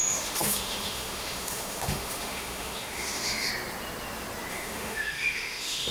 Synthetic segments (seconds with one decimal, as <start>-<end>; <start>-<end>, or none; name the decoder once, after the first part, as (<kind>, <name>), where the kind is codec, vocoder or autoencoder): 0.0-3.5 (autoencoder, DAC-VAE); 4.5-5.9